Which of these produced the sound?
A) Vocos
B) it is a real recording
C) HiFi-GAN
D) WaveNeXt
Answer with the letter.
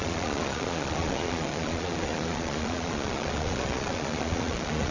A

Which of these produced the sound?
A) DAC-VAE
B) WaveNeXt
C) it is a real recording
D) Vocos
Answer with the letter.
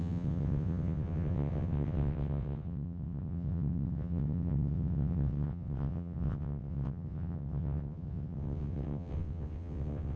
B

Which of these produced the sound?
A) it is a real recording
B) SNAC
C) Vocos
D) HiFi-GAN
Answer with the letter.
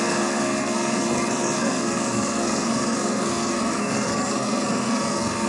B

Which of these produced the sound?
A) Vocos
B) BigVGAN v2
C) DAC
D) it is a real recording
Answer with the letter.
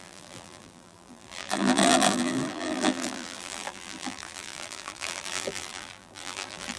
B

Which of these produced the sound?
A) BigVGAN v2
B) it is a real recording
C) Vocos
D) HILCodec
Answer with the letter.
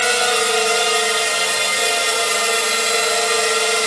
B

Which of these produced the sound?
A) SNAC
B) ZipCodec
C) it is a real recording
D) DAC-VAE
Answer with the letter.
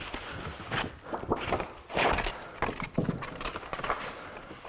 C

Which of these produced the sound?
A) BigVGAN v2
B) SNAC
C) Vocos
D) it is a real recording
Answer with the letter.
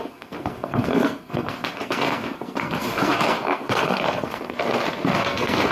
B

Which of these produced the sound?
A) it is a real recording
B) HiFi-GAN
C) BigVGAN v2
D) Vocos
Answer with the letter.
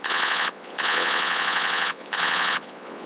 D